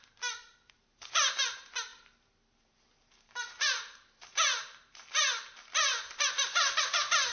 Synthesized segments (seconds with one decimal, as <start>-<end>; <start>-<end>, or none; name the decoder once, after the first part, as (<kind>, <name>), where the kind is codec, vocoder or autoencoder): 0.0-7.3 (vocoder, BigVGAN v2)